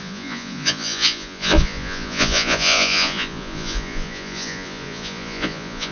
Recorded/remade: remade